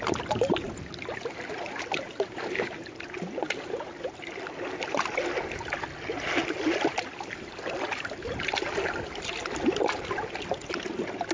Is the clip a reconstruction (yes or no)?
no